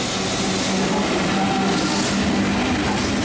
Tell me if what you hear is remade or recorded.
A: recorded